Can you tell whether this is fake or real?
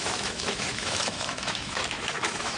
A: fake